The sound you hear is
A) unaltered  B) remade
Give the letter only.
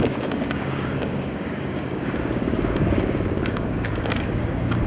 B